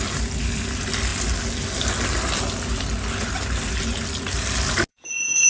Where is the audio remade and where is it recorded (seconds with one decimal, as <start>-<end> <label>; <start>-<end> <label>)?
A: 0.0-4.9 recorded; 4.9-5.5 remade